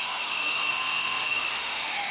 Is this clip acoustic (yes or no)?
no